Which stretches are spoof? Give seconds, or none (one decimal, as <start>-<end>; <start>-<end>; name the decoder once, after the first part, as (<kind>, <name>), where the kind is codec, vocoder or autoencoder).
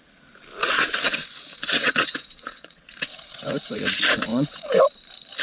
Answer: 0.6-3.8 (vocoder, WaveNeXt); 4.3-4.8